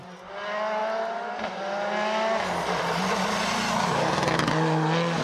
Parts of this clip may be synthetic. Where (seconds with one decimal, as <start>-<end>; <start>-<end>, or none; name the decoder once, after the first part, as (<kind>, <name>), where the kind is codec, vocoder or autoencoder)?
none

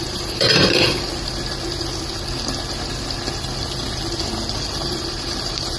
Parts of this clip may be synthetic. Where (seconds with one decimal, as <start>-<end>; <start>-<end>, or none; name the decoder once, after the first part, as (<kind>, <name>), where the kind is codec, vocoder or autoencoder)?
0.0-1.1 (vocoder, BigVGAN v2); 4.6-5.8

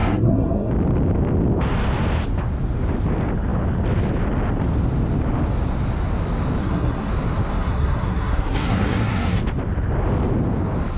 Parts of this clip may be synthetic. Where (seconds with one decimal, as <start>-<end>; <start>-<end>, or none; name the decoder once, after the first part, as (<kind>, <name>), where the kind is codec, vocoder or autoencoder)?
0.0-0.7 (codec, SNAC); 6.6-7.1; 7.5-9.4

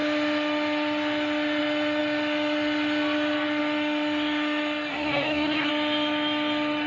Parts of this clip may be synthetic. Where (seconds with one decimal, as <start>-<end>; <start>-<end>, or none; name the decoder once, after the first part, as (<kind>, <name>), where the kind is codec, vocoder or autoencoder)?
4.9-5.7 (codec, SNAC)

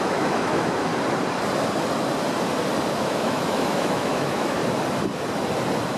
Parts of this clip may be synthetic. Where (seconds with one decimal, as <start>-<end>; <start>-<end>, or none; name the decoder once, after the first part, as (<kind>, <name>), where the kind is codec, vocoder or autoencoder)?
0.0-0.9 (autoencoder, DAC-VAE); 2.9-4.6